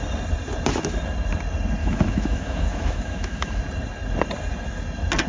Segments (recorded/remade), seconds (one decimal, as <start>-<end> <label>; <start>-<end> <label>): 0.0-1.8 recorded; 1.8-3.6 remade; 3.6-5.3 recorded